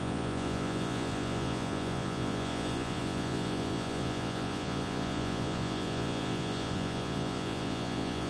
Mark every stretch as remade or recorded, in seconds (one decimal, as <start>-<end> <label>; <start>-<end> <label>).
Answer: 0.0-8.3 remade